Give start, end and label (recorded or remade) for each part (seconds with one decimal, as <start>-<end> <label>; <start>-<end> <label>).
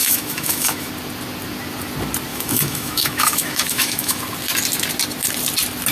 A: 0.0-0.9 remade; 0.9-2.3 recorded; 2.3-4.2 remade; 4.2-5.9 recorded